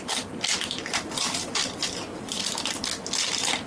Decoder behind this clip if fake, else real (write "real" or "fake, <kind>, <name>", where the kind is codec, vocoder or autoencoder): real